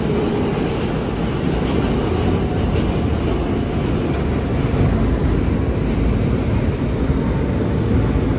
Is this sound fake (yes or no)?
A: no